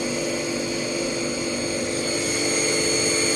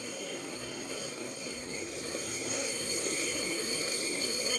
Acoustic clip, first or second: first